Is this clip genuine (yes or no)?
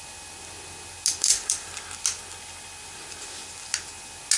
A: yes